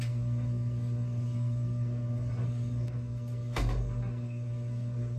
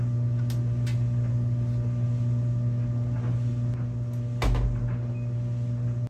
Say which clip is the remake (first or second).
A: first